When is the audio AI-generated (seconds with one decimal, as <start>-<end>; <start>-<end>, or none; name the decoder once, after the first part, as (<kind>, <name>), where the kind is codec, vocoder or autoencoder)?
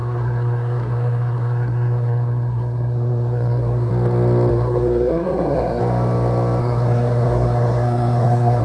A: 0.0-3.9 (codec, SNAC); 4.5-5.8; 6.6-8.6